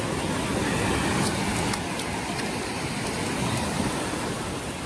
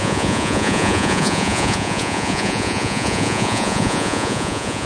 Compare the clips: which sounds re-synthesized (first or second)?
second